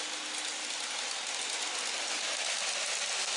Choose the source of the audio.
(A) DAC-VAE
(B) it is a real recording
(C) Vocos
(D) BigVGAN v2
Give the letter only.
B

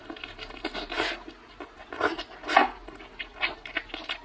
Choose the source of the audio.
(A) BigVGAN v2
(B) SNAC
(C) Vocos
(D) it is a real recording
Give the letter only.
D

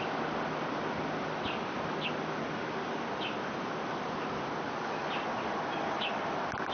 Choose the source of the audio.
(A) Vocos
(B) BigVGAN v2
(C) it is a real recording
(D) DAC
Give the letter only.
C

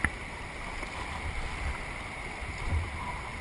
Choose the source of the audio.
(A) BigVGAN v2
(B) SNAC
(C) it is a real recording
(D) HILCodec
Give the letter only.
C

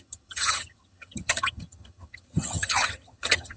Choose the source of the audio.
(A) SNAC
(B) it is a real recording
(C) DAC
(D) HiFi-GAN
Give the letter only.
D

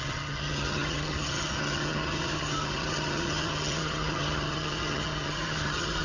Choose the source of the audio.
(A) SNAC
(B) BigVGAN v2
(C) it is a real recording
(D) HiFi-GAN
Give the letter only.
D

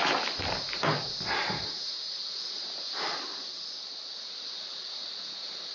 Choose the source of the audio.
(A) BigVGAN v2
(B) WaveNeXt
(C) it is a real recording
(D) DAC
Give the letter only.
C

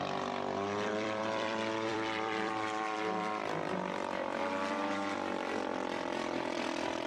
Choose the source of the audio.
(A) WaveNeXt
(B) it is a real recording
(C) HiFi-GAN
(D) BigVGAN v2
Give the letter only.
D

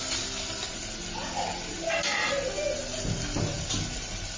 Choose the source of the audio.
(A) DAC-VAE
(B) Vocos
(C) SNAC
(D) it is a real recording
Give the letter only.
D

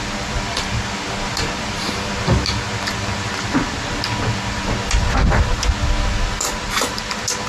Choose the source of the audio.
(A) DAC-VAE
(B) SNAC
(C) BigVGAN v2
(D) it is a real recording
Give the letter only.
D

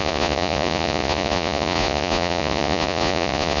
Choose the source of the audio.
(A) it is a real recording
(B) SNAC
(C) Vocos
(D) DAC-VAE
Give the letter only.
C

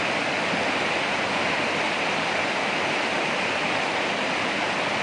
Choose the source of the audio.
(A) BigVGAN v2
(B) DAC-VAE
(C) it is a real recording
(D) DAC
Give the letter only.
C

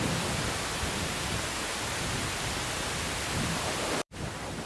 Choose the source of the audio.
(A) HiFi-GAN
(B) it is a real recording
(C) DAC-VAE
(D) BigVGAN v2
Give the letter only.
D